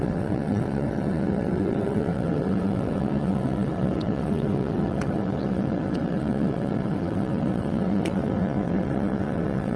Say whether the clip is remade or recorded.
remade